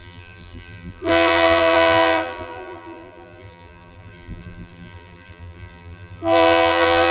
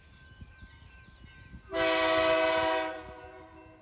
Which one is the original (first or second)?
second